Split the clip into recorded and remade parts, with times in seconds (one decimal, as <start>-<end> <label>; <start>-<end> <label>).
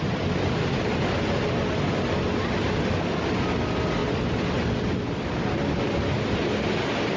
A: 0.0-7.2 recorded